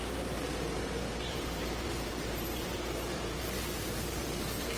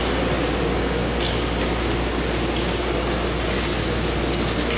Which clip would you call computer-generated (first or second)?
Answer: first